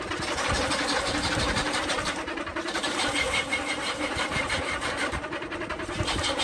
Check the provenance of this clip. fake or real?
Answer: fake